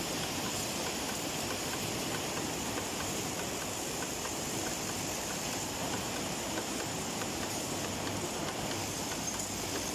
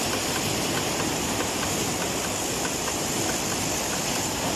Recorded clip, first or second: second